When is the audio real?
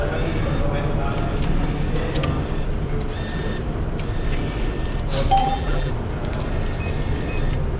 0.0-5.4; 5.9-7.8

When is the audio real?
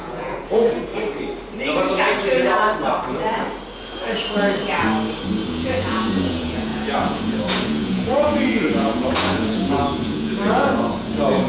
0.9-5.5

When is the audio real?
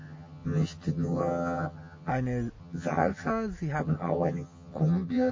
2.1-2.6; 3.3-3.8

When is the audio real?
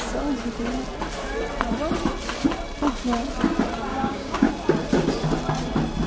0.0-3.9; 4.5-6.1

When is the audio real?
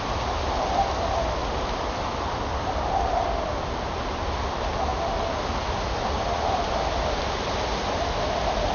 0.0-8.7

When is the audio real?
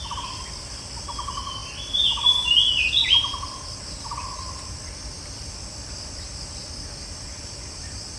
0.0-8.2